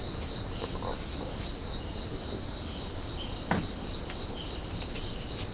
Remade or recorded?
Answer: recorded